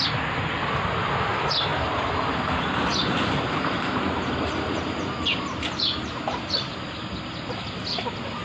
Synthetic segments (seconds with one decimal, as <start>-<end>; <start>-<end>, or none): 1.7-6.7